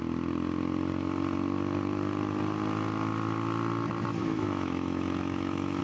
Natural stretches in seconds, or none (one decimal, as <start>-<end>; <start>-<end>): 0.0-4.2